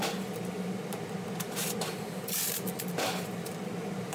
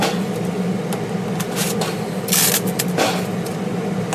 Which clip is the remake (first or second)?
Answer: first